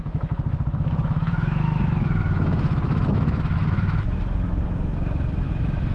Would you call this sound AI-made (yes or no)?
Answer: yes